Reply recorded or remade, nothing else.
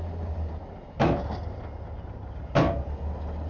recorded